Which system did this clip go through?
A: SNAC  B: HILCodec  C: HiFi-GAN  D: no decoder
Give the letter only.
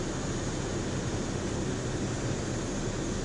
D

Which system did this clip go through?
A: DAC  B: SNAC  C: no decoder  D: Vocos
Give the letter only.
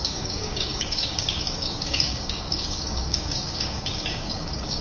A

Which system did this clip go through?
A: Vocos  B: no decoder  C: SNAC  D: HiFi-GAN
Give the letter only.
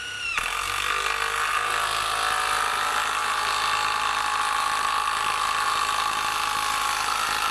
B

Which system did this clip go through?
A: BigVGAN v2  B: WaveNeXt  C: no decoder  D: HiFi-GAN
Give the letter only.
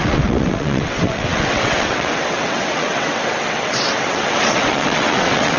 B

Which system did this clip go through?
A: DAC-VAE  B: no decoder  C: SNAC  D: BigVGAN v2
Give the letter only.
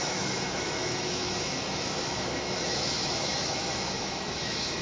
A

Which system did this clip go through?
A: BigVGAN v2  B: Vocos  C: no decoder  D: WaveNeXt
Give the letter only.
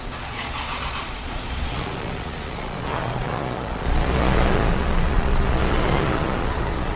B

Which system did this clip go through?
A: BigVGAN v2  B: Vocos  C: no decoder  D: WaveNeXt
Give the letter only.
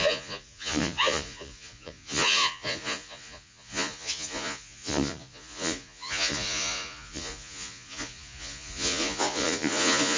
B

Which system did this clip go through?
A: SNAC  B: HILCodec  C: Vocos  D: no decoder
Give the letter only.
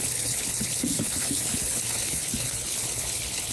B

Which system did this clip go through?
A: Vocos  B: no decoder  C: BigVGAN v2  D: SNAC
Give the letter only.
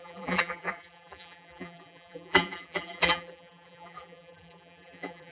C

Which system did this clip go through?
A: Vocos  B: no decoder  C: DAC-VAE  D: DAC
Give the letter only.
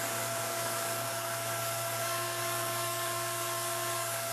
D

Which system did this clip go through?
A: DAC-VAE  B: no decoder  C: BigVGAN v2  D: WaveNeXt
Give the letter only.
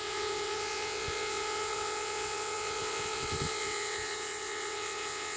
D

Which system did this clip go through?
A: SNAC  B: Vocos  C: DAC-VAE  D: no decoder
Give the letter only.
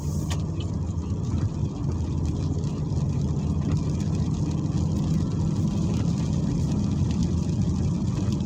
D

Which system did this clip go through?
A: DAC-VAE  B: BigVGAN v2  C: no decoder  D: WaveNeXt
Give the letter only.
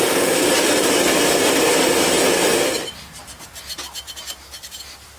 C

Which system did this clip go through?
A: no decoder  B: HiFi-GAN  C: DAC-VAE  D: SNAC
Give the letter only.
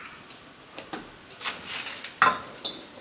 A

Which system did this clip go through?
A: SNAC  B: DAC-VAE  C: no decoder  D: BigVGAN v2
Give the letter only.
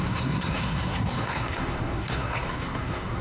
A